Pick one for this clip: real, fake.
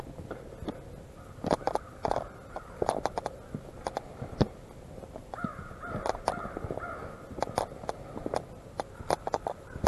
real